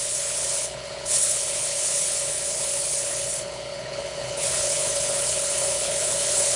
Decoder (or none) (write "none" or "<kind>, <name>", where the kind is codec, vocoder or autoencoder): codec, HILCodec